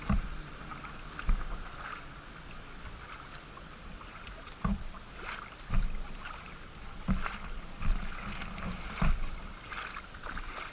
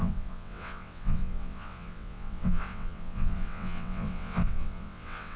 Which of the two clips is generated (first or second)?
second